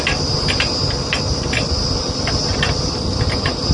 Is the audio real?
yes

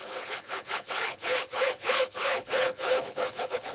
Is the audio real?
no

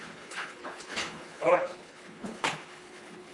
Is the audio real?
no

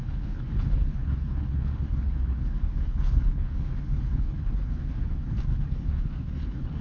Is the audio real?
no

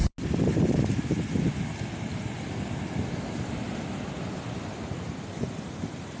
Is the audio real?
yes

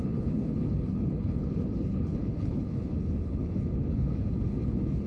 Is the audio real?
no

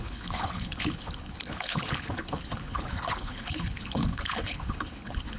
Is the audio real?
no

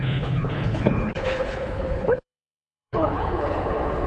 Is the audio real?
no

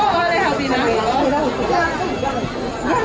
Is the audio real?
yes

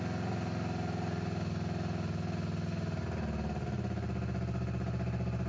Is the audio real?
yes